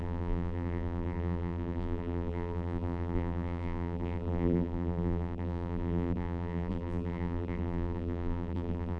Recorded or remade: remade